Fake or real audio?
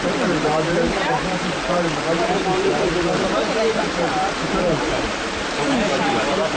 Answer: fake